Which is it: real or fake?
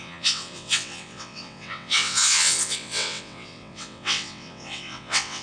fake